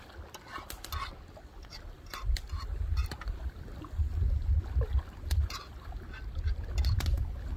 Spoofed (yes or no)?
no